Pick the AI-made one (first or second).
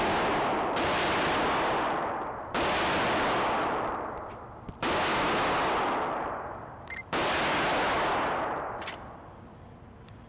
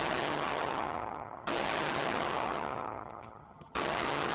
second